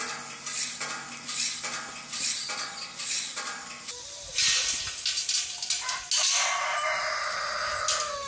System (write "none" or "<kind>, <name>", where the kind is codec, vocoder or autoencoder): none